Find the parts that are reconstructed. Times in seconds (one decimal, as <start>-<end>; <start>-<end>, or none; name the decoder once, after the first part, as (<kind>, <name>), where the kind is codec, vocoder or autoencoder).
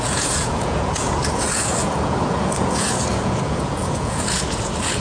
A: 0.0-5.0 (vocoder, Vocos)